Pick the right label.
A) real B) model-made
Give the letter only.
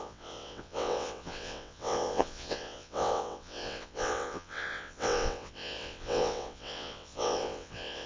B